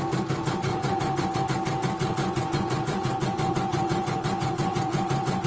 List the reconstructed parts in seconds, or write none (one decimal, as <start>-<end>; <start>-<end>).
0.7-1.4; 2.2-5.5